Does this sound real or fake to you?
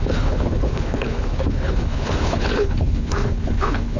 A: fake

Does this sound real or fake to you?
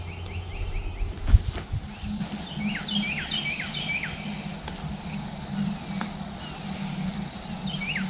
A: real